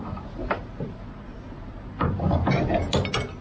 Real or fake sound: real